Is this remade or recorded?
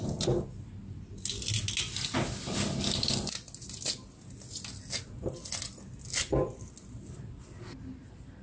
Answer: recorded